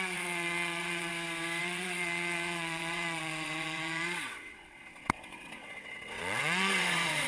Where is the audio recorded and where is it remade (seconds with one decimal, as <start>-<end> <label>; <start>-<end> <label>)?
0.0-1.1 remade; 1.1-1.6 recorded; 1.6-7.3 remade